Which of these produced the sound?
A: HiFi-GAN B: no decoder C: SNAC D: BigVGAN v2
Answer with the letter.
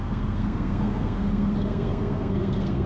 C